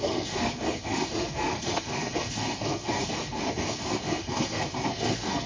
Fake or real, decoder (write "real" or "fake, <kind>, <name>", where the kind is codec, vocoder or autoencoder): fake, codec, SNAC